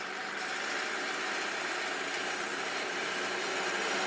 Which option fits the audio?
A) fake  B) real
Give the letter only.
B